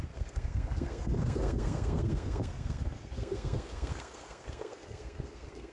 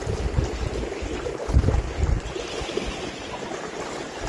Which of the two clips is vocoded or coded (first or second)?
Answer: first